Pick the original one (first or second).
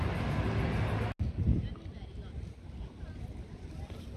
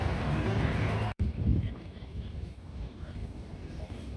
first